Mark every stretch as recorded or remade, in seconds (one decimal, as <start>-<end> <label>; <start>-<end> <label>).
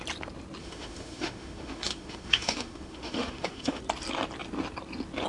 0.0-0.6 recorded; 0.6-3.8 remade; 3.8-5.3 recorded